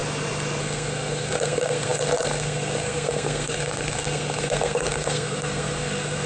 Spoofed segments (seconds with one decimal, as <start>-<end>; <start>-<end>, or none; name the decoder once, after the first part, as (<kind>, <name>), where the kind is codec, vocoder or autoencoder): 0.6-6.3 (codec, SNAC)